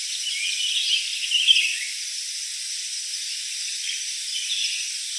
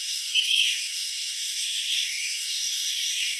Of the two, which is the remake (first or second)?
second